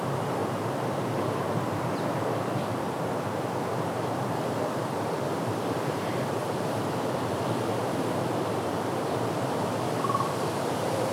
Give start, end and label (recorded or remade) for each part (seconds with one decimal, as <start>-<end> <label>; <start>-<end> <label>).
0.0-11.1 remade